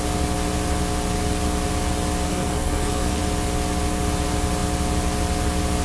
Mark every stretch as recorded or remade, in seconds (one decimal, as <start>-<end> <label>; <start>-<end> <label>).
0.0-2.3 recorded; 2.3-3.2 remade; 3.2-5.8 recorded